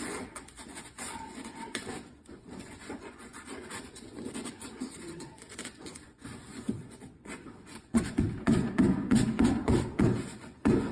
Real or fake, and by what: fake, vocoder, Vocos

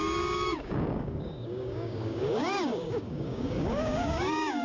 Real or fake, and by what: fake, codec, DAC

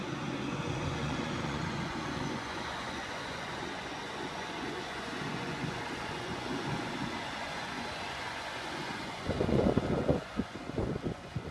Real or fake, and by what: fake, vocoder, Vocos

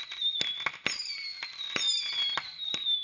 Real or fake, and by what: real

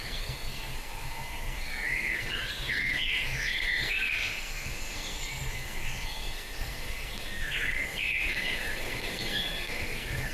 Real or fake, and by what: fake, codec, SNAC